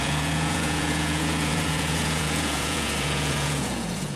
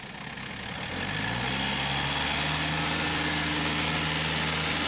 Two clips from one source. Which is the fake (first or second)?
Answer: first